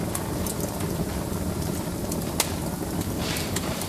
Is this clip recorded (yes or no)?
yes